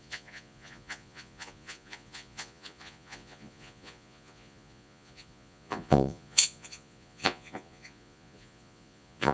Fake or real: fake